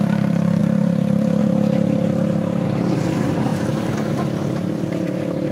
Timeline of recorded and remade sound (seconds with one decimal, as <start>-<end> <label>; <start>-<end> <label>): 0.0-0.6 recorded; 0.6-1.4 remade; 1.4-3.5 recorded; 3.5-4.9 remade; 4.9-5.5 recorded